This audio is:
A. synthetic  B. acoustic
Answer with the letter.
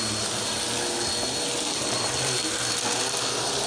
B